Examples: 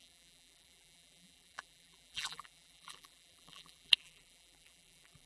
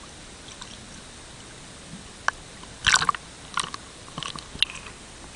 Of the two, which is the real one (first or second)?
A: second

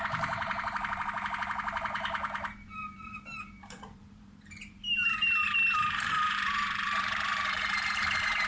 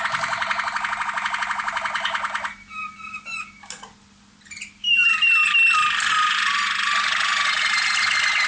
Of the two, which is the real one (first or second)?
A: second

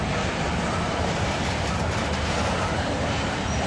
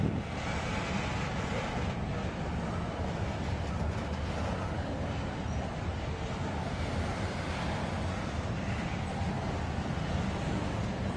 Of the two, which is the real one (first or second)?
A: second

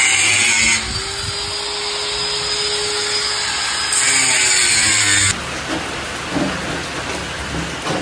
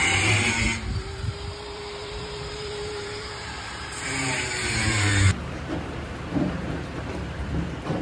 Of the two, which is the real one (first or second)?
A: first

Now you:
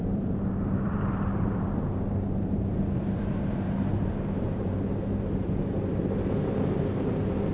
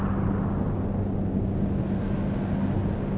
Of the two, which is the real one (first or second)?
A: second